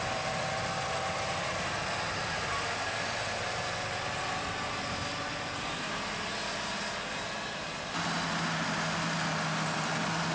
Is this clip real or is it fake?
real